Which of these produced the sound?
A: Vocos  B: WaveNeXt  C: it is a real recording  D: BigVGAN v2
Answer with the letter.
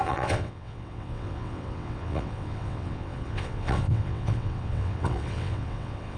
B